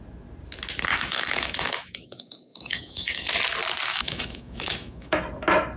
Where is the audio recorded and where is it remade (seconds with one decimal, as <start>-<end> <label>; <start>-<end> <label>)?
0.0-0.9 recorded; 0.9-3.3 remade; 3.3-3.9 recorded; 3.9-5.2 remade; 5.2-5.8 recorded